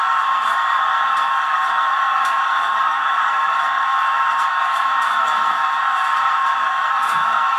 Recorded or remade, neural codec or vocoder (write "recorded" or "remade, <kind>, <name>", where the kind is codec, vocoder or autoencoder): remade, codec, SNAC